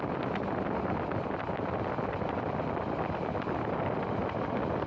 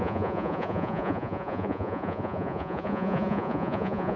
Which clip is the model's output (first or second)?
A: second